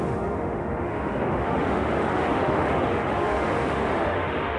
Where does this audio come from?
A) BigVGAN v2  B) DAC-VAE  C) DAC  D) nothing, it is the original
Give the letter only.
B